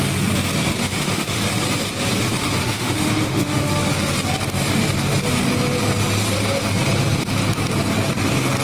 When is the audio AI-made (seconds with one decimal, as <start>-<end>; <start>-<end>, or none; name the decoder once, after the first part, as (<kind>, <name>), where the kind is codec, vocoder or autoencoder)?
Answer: 0.8-1.4 (autoencoder, DAC-VAE); 2.6-3.6